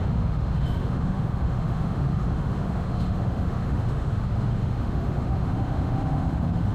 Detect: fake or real fake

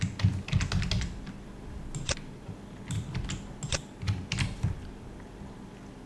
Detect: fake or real real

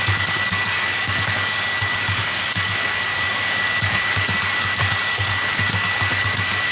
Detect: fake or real fake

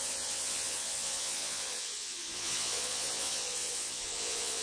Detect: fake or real fake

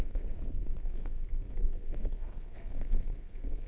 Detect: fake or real fake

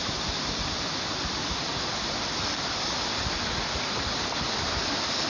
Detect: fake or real real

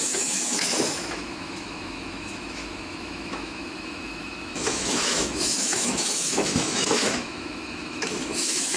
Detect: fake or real fake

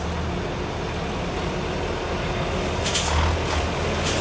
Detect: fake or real real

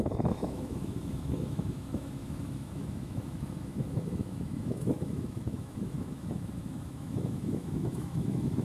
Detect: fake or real fake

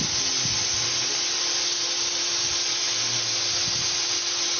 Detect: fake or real real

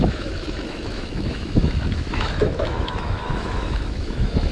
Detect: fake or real fake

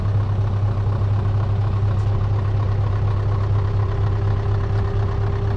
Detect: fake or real real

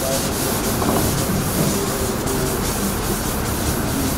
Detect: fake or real real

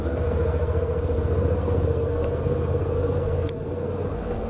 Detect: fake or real fake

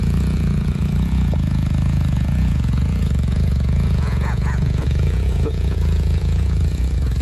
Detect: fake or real fake